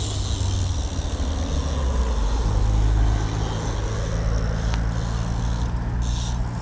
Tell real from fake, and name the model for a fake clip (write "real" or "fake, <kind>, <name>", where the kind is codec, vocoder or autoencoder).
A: real